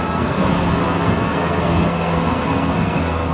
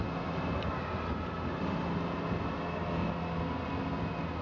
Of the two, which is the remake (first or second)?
first